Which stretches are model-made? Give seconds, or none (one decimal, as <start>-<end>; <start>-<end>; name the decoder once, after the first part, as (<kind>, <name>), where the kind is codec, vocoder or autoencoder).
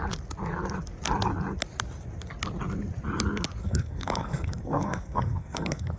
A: 3.6-6.0 (codec, SNAC)